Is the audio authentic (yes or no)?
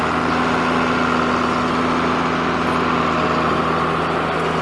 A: yes